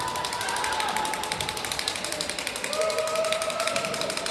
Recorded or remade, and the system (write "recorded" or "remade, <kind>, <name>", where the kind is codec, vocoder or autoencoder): recorded